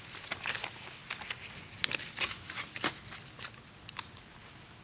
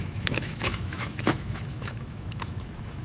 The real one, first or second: first